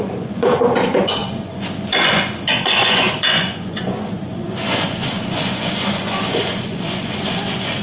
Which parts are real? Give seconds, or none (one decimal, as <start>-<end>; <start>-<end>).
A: none